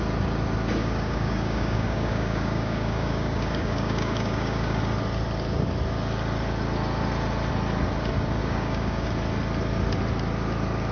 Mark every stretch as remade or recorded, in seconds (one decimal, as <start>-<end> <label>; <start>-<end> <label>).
0.0-0.8 recorded; 0.8-4.8 remade; 4.8-8.4 recorded; 8.4-9.1 remade; 9.1-10.9 recorded